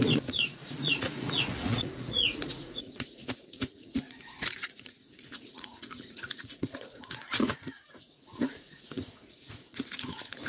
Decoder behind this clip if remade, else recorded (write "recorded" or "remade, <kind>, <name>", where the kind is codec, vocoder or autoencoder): remade, vocoder, Vocos